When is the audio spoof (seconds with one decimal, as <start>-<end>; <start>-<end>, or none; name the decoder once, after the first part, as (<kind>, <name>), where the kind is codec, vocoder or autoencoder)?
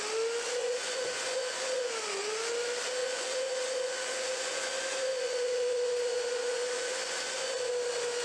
0.6-1.9 (vocoder, Vocos); 3.0-7.7